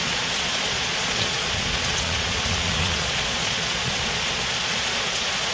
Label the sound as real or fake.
fake